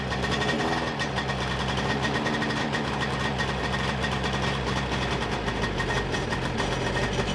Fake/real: real